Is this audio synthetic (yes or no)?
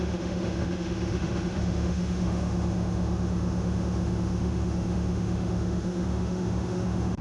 yes